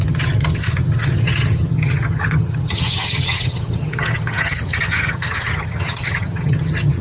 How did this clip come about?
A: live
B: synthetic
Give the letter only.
B